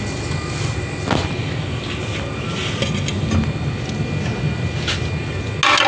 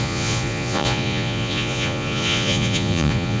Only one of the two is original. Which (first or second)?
first